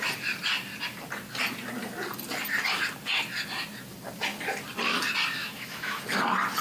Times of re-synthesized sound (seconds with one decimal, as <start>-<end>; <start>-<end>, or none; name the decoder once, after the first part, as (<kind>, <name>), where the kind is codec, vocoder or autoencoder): 5.4-6.0 (autoencoder, DAC-VAE)